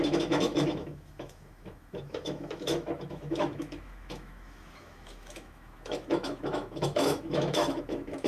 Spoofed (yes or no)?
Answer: yes